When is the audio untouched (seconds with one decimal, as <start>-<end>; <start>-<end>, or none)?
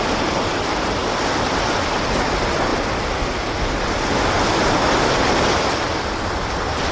0.0-1.0; 1.9-2.7